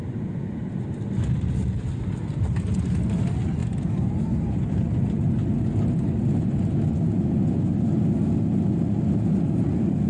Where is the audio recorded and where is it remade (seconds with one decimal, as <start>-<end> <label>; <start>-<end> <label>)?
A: 0.0-10.1 recorded